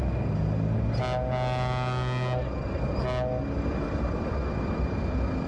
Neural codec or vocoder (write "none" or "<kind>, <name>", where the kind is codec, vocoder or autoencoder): none